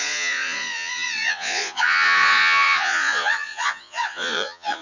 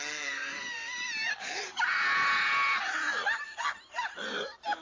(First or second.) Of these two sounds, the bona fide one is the second